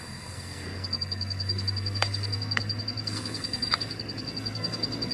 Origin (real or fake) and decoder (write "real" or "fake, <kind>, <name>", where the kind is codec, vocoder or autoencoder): fake, codec, SNAC